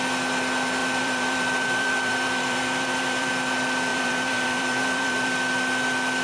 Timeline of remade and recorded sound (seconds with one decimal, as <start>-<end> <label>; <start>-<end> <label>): 0.0-0.8 recorded; 0.8-3.3 remade; 3.3-3.9 recorded; 3.9-5.3 remade; 5.3-6.2 recorded